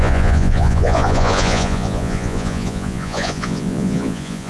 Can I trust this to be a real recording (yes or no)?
no